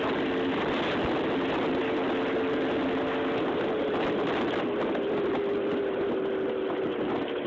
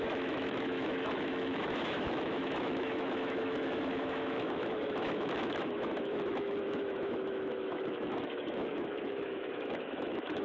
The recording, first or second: first